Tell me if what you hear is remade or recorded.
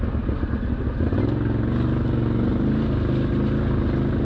recorded